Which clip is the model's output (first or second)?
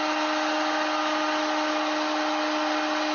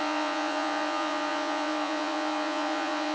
second